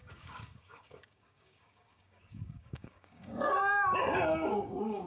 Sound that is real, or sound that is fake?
fake